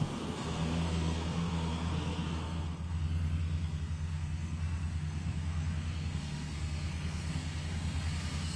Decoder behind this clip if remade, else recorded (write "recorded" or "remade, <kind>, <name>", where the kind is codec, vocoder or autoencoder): remade, codec, SNAC